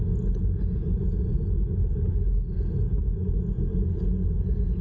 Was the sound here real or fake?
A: real